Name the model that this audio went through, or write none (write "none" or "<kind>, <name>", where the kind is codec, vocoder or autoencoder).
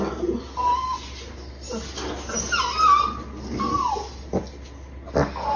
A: none